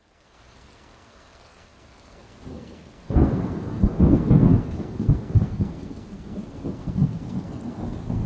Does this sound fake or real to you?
fake